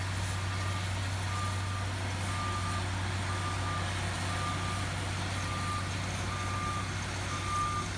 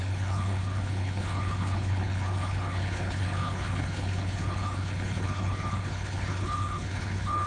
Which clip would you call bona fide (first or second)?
first